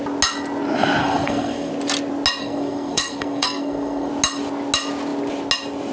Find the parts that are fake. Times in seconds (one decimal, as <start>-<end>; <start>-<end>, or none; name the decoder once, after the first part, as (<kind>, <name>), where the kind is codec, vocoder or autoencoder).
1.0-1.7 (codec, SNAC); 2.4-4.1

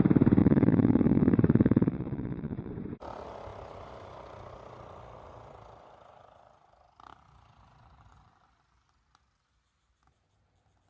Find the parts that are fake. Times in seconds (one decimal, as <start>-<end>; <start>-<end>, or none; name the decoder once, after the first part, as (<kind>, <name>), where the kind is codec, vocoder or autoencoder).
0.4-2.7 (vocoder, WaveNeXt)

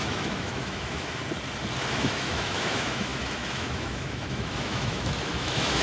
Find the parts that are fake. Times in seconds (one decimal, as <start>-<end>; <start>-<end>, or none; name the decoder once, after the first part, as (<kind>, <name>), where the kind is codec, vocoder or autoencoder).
0.0-1.2 (autoencoder, DAC-VAE); 1.9-5.8

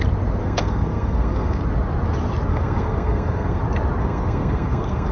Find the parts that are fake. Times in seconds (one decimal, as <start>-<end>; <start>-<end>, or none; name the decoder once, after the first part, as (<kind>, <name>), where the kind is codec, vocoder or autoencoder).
0.4-1.6 (codec, SNAC); 2.5-3.6; 4.0-5.1